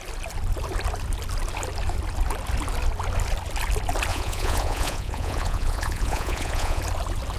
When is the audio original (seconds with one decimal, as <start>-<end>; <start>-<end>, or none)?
0.0-4.1; 6.8-7.4